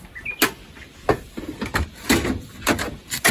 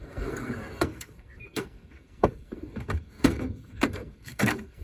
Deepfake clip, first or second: second